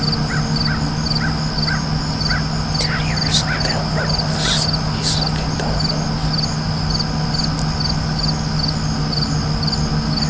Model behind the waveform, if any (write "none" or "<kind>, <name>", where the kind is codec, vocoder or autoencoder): none